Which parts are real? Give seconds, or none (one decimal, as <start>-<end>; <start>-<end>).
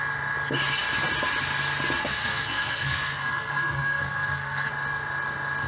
0.0-2.0; 4.7-5.7